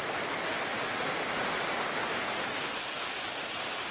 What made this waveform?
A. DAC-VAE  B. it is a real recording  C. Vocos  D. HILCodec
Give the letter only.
B